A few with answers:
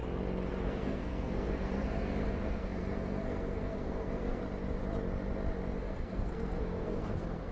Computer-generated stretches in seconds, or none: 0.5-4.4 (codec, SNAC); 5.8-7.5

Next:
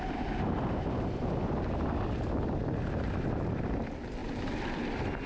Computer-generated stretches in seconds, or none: none

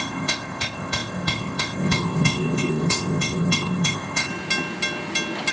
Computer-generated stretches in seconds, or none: 0.0-4.3 (codec, ZipCodec)

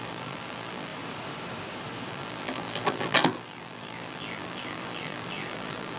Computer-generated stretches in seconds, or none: 0.0-0.9 (vocoder, BigVGAN v2); 2.1-6.0

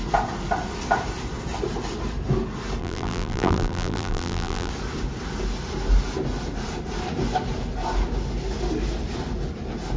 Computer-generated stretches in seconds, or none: 2.8-4.7 (vocoder, BigVGAN v2)

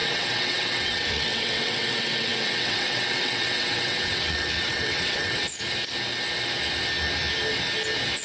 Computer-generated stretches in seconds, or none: 0.0-5.4 (vocoder, WaveNeXt)